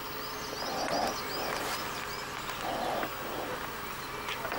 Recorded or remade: recorded